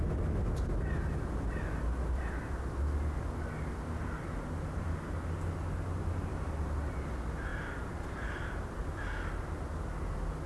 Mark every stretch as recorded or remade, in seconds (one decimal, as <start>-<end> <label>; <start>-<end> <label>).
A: 0.0-7.5 recorded; 7.5-9.0 remade; 9.0-10.5 recorded